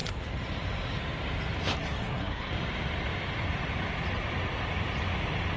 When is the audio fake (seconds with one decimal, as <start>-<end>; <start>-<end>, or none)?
1.8-2.5